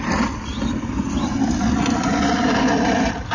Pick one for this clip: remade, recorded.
recorded